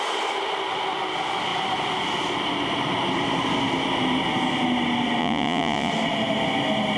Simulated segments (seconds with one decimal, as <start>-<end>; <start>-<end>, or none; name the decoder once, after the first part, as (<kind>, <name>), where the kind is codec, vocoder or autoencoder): 5.2-5.9 (vocoder, Vocos)